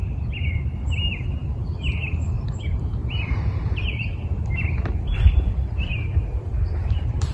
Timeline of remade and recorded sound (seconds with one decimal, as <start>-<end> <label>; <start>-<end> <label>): 0.0-3.1 recorded; 3.1-7.3 remade